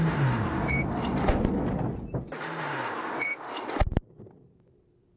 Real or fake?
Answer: real